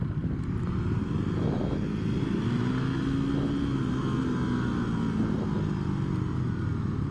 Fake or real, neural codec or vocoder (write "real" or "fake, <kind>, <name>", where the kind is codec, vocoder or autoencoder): real